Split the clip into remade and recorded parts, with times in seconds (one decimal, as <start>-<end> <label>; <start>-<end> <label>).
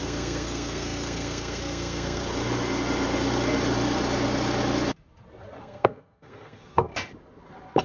0.0-2.2 remade; 2.2-5.6 recorded; 5.6-6.9 remade; 6.9-7.8 recorded